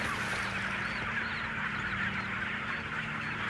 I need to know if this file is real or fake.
real